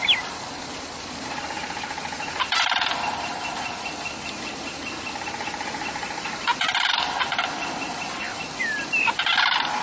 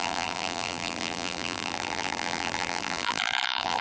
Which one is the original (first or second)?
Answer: first